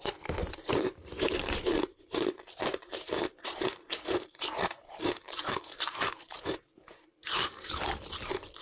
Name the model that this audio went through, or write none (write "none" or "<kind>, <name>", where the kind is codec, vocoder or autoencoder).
vocoder, BigVGAN v2